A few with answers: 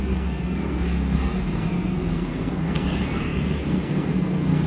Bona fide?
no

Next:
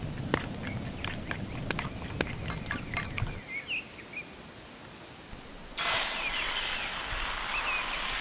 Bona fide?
yes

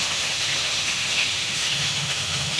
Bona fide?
no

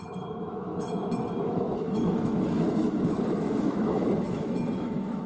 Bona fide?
no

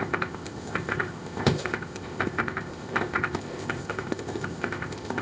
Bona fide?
no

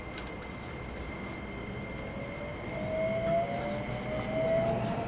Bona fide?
yes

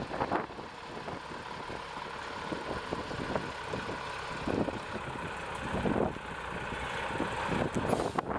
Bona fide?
yes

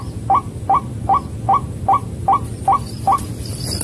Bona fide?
yes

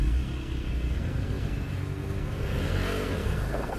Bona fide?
no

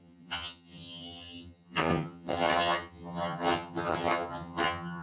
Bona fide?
no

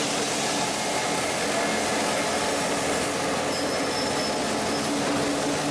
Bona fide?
yes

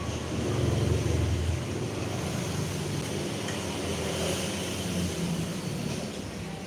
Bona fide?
yes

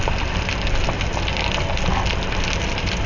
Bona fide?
yes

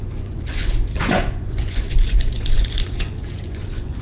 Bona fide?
no